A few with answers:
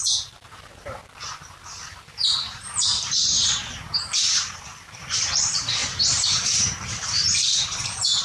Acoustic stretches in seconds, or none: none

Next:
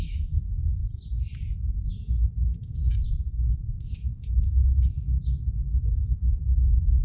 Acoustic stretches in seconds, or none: 0.8-1.9; 2.8-3.7; 4.6-5.9

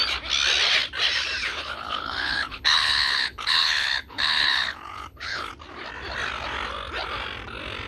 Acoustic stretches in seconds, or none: 0.0-1.4; 5.5-7.9

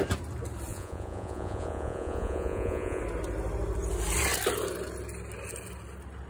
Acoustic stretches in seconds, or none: 0.0-0.7; 3.0-6.3